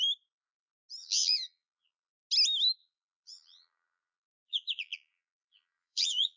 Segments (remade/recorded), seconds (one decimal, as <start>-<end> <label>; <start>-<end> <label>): 0.0-1.0 recorded; 1.0-2.1 remade; 2.1-2.8 recorded; 2.8-6.4 remade